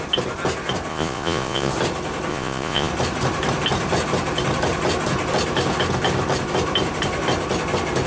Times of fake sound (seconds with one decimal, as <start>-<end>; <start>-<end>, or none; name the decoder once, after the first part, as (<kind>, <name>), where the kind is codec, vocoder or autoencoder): 0.9-1.7 (vocoder, Vocos); 2.3-2.9